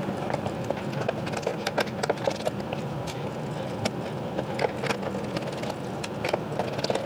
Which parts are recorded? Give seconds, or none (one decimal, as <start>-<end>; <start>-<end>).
0.0-7.1